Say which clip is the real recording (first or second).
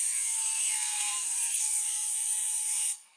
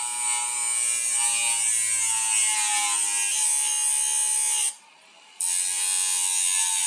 second